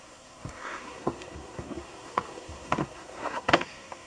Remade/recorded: remade